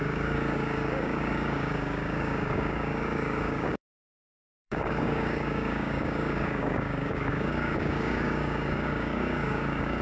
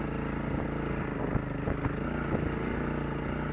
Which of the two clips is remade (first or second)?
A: first